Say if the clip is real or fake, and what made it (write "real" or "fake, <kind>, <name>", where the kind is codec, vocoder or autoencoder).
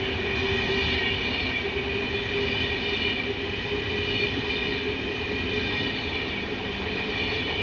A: real